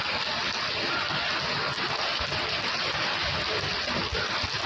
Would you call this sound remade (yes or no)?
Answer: no